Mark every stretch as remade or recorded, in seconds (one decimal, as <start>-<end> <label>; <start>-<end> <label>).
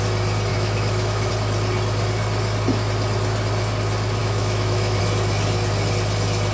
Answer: 0.0-0.5 recorded; 0.5-1.3 remade; 1.3-4.2 recorded; 4.2-5.0 remade; 5.0-6.5 recorded